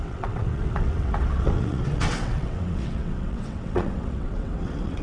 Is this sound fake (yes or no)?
yes